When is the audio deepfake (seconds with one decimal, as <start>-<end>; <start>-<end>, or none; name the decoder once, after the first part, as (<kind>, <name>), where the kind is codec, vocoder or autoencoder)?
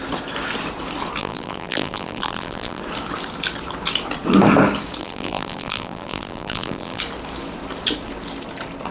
1.2-2.8 (vocoder, BigVGAN v2); 5.0-7.0